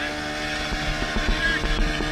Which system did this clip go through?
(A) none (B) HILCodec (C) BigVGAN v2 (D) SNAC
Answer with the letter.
A